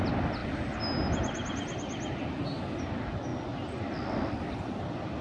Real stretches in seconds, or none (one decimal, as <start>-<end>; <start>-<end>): 0.0-5.2